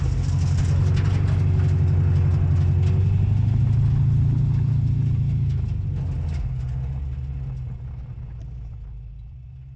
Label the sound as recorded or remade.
recorded